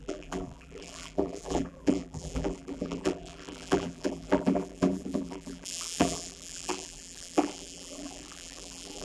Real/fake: fake